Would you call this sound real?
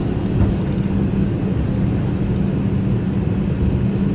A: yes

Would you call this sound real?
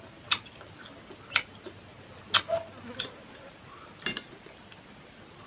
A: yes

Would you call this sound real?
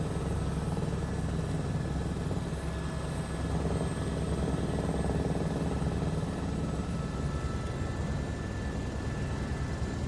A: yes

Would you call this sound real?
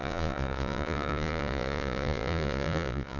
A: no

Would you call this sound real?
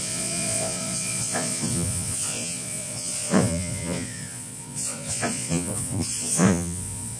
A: no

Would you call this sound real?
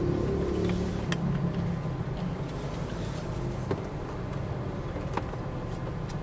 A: yes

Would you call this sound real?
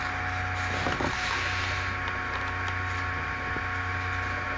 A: yes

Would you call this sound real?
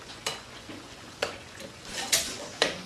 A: no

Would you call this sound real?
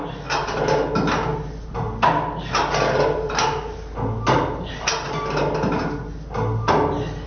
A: yes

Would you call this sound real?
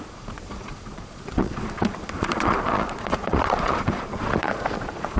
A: no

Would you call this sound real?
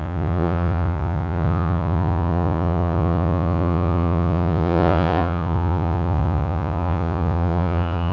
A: no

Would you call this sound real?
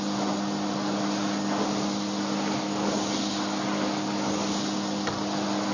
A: yes